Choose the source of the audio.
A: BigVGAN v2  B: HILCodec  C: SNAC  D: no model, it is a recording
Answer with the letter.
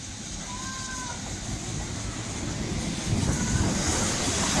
D